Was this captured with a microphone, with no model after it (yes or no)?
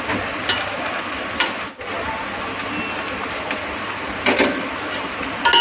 yes